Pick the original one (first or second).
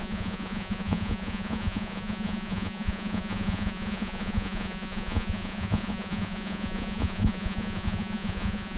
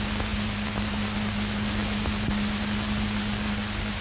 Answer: second